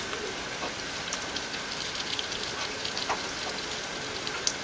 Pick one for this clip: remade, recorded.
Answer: recorded